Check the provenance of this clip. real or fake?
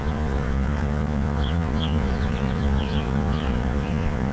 fake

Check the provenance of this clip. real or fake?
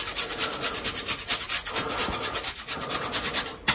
real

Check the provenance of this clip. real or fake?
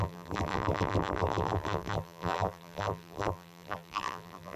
fake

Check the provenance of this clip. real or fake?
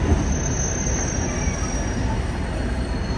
real